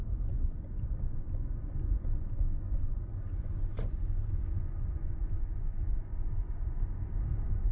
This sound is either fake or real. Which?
fake